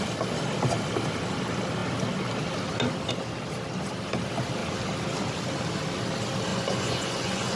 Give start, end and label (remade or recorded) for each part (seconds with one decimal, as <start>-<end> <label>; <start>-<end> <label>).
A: 0.0-6.5 recorded; 6.5-7.6 remade